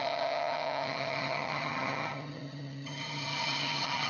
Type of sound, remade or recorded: remade